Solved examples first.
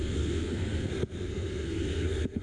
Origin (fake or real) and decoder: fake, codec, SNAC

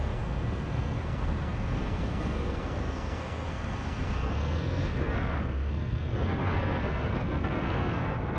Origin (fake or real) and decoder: fake, codec, SNAC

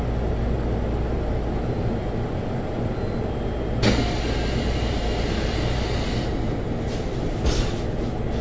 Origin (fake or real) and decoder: real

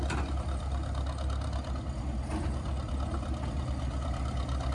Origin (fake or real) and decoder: real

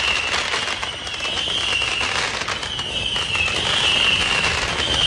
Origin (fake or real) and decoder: real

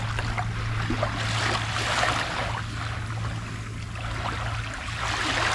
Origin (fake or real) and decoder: real